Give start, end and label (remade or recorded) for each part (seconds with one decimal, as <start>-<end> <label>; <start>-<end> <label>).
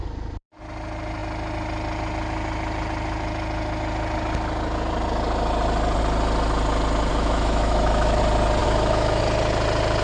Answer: 0.0-7.1 recorded; 7.1-8.2 remade; 8.2-8.6 recorded; 8.6-9.2 remade; 9.2-10.0 recorded